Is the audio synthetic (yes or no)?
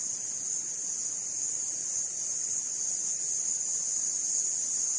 no